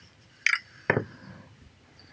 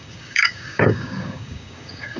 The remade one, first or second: second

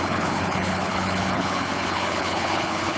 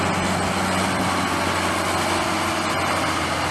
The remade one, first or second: first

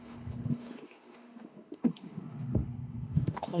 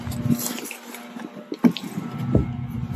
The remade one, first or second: first